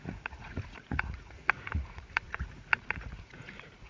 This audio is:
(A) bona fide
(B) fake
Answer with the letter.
B